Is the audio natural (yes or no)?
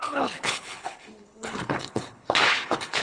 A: no